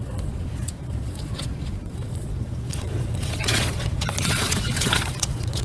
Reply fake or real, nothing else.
fake